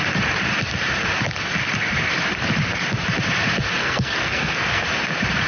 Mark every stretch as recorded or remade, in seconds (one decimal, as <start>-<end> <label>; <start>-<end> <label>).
0.0-3.8 recorded; 3.8-4.8 remade; 4.8-5.5 recorded